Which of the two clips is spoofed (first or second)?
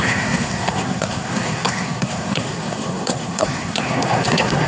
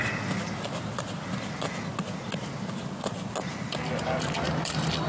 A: first